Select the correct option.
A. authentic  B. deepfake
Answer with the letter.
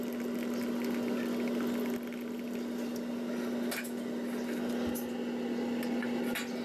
A